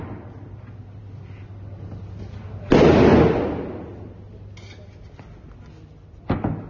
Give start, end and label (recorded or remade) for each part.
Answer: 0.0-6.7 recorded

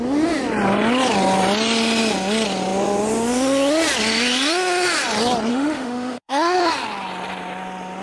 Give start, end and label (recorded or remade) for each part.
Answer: 0.0-5.5 recorded; 5.5-6.6 remade; 6.6-8.0 recorded